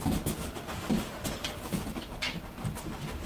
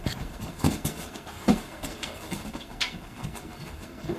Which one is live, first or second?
first